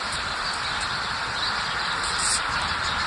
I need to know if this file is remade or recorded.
recorded